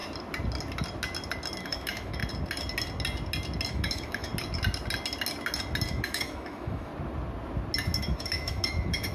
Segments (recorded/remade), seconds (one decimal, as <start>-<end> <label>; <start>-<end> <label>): 0.0-1.6 recorded; 1.6-2.2 remade; 2.2-3.7 recorded; 3.7-4.3 remade; 4.3-5.9 recorded; 5.9-6.9 remade; 6.9-8.0 recorded; 8.0-9.1 remade